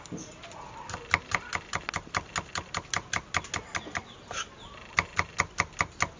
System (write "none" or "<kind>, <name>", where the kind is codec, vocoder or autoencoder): none